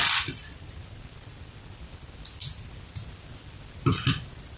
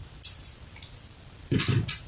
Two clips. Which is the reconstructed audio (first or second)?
second